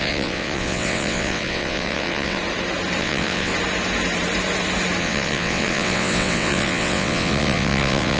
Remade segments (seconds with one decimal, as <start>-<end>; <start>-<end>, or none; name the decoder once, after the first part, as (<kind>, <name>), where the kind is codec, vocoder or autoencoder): 0.0-2.4 (vocoder, WaveNeXt); 3.0-3.5; 5.0-8.2